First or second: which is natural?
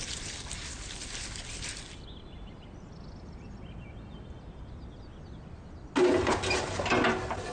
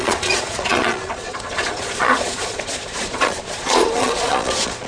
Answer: first